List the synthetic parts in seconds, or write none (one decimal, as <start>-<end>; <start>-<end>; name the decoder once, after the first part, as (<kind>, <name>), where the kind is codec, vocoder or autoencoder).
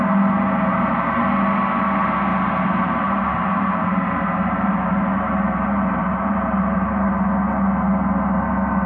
0.7-1.2 (vocoder, BigVGAN v2); 2.3-7.1